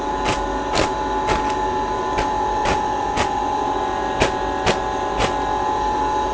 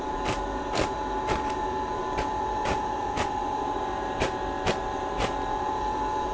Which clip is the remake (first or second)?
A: second